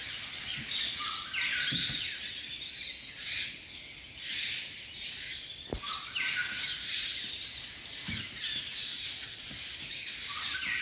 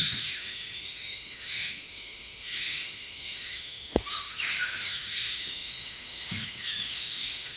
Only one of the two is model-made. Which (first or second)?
second